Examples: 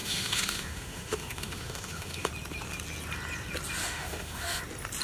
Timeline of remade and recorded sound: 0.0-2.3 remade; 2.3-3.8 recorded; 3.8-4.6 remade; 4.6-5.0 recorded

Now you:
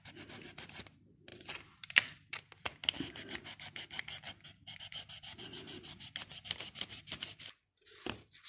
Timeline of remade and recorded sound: 0.0-8.5 recorded

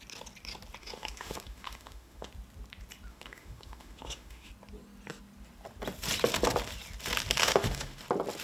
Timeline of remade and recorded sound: 0.0-0.8 recorded; 0.8-2.3 remade; 2.3-3.1 recorded; 3.1-4.5 remade; 4.5-7.4 recorded; 7.4-8.0 remade; 8.0-8.4 recorded

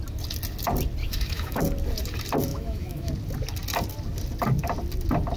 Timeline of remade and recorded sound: 0.0-1.0 recorded; 1.0-1.6 remade; 1.6-2.5 recorded; 2.5-3.1 remade; 3.1-5.4 recorded

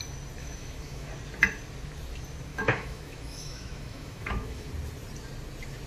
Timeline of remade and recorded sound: 0.0-0.4 recorded; 0.4-1.1 remade; 1.1-2.5 recorded; 2.5-4.7 remade; 4.7-5.9 recorded

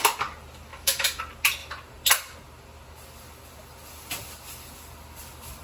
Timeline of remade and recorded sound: 0.0-0.7 recorded; 0.7-1.2 remade; 1.2-5.6 recorded